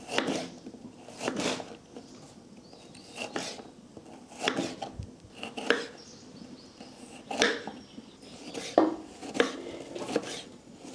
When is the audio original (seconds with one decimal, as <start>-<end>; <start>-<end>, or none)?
0.0-10.9